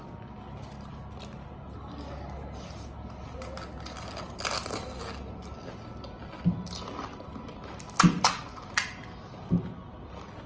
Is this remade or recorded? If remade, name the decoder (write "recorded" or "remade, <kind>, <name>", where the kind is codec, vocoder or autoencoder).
recorded